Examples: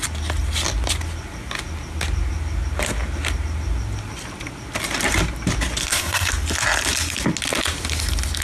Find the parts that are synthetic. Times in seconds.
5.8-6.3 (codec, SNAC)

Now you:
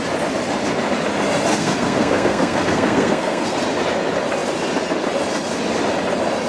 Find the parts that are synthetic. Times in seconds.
1.5-3.6 (codec, SNAC)

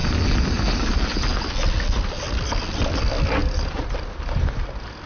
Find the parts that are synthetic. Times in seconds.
none

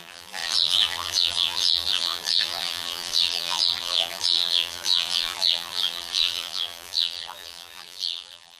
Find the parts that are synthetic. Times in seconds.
0.0-8.6 (vocoder, BigVGAN v2)

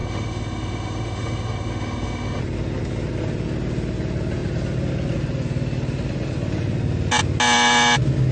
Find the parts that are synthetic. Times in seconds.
0.0-2.4 (autoencoder, DAC-VAE)